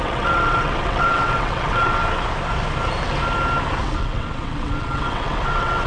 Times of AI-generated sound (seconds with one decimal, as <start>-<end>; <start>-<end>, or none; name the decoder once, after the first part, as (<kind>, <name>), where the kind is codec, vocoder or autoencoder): 0.0-2.0 (vocoder, WaveNeXt); 3.8-5.9